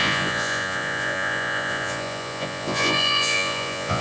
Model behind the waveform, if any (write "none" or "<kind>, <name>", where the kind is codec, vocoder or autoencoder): vocoder, Vocos